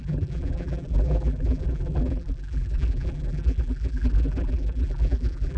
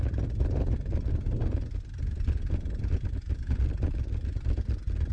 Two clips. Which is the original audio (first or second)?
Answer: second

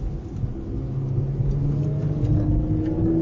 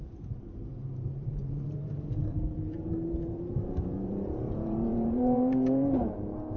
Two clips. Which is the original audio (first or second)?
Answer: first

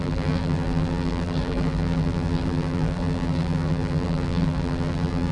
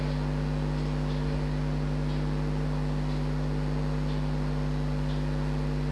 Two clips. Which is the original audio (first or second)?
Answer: second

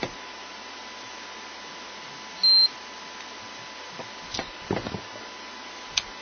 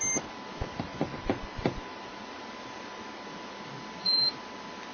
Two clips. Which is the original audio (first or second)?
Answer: first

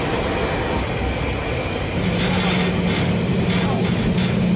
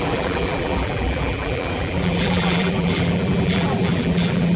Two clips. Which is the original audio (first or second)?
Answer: first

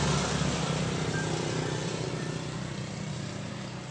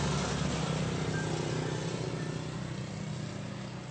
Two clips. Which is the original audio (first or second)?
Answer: second